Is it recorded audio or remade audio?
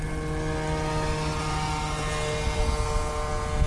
recorded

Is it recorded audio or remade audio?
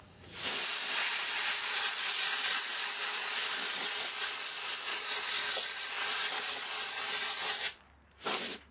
recorded